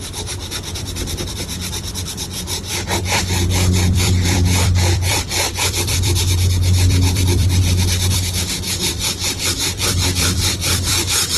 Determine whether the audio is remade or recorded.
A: remade